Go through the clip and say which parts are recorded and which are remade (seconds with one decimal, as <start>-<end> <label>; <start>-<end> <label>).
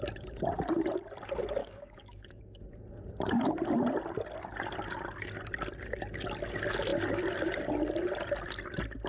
0.0-1.6 recorded; 1.6-2.6 remade; 2.6-9.1 recorded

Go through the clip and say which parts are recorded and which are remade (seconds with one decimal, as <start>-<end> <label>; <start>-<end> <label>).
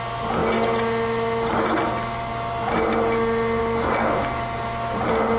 0.0-5.4 recorded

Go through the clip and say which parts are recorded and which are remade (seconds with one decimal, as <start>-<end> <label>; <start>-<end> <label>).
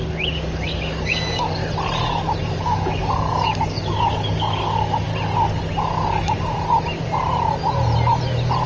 0.0-1.6 remade; 1.6-2.4 recorded; 2.4-5.1 remade; 5.1-8.7 recorded